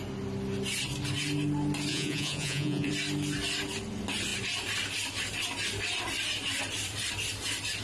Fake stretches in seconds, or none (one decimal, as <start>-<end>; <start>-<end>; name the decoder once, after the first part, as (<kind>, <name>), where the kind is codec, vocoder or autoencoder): 1.9-2.9 (vocoder, Vocos)